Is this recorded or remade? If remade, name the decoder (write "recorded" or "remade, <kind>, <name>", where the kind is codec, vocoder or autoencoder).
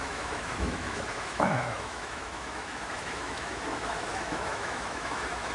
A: remade, autoencoder, DAC-VAE